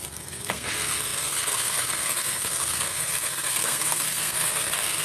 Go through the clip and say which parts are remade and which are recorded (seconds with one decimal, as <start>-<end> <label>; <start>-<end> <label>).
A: 0.0-5.0 remade